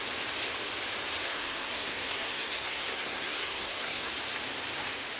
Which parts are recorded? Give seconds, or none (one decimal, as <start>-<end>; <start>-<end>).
0.0-1.3; 4.1-5.2